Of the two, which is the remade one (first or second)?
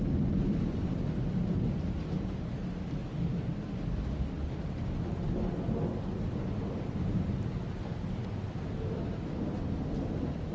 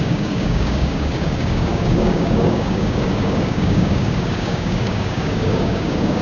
second